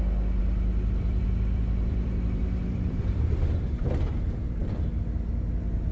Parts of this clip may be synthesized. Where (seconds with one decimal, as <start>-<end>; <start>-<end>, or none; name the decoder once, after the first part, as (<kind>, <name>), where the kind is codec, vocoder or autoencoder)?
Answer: 0.4-3.4 (vocoder, BigVGAN v2)